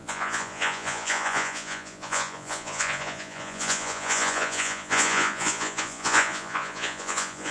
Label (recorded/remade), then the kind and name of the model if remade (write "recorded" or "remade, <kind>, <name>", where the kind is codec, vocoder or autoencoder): remade, vocoder, Vocos